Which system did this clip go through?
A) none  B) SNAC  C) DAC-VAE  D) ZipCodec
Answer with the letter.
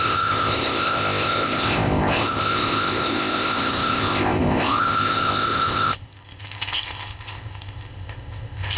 D